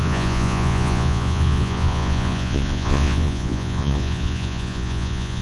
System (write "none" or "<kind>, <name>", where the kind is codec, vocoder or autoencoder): vocoder, Vocos